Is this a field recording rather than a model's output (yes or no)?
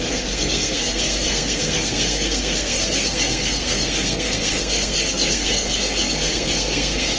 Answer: no